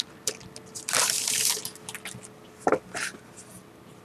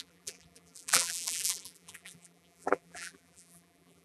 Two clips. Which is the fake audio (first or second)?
second